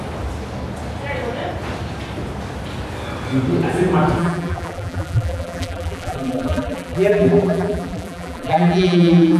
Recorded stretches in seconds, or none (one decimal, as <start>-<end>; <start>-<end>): 0.0-4.2